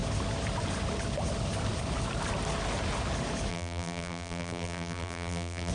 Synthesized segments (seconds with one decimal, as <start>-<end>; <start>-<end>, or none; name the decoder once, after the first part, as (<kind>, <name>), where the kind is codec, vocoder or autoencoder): 3.5-5.7 (vocoder, BigVGAN v2)